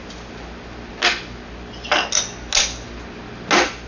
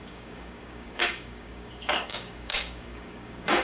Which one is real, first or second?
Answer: first